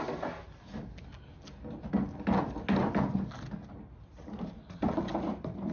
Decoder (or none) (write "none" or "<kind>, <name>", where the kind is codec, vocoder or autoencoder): none